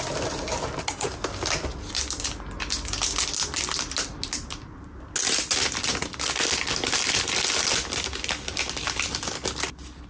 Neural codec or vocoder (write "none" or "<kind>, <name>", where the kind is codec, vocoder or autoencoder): none